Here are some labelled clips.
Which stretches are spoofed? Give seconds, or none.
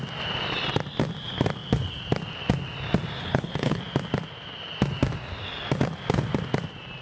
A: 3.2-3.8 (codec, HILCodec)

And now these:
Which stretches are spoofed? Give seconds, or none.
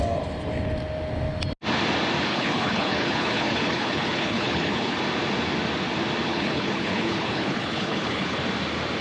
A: 2.3-5.0 (codec, HILCodec); 6.3-8.4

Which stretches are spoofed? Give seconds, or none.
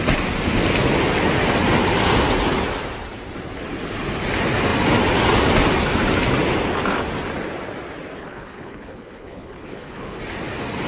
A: 8.2-10.2 (codec, HILCodec)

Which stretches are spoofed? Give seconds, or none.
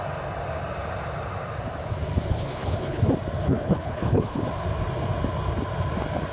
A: 2.3-3.0 (codec, HILCodec); 3.5-4.4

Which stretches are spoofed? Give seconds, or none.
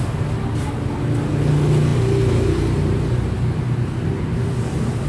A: none